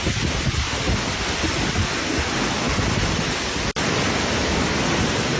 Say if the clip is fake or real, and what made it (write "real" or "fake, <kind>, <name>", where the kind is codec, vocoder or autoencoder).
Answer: real